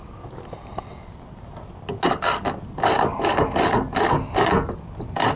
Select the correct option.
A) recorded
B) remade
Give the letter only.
A